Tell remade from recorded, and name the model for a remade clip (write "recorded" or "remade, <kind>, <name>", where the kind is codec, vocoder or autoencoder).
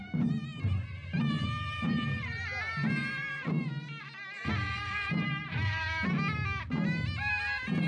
remade, vocoder, BigVGAN v2